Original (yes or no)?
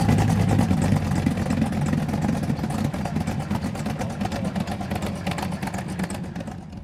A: yes